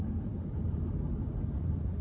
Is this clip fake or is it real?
real